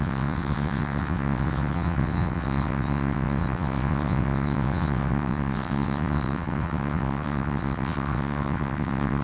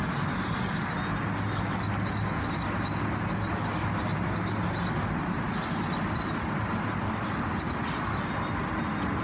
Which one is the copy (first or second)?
first